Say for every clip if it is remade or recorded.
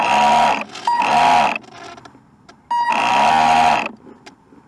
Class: recorded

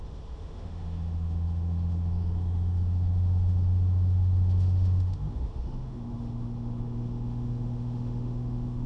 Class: remade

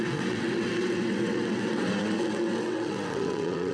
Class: remade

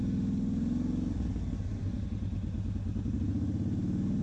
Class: recorded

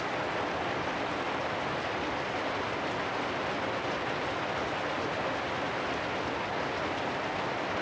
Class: recorded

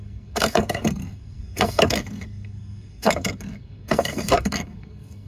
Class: remade